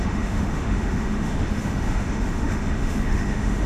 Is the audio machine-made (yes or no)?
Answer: yes